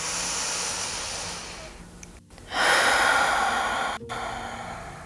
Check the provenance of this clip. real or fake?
real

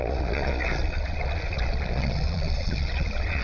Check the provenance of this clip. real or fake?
fake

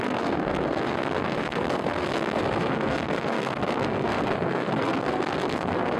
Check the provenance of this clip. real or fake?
fake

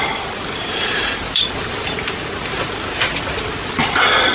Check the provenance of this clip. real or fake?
real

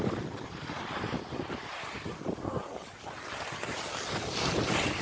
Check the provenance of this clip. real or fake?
fake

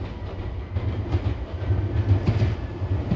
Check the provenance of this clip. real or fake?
real